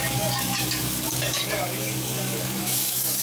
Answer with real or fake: fake